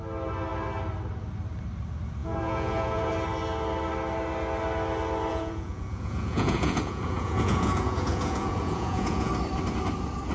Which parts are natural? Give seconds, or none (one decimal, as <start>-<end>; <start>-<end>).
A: 0.0-2.2; 3.1-5.3; 9.3-10.3

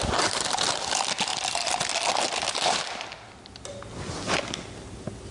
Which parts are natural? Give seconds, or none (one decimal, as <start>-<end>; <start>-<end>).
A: 0.0-5.3

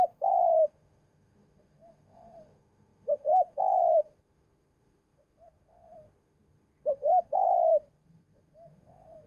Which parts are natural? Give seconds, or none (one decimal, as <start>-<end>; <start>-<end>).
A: none